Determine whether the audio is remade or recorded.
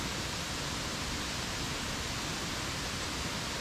recorded